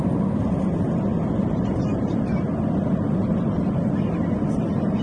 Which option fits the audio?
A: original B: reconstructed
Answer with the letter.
A